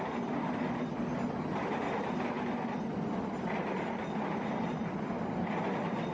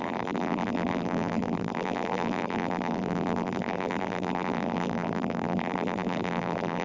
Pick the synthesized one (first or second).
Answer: second